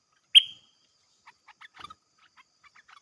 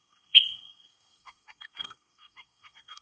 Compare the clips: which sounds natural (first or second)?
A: first